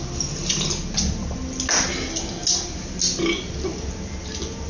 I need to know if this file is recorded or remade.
recorded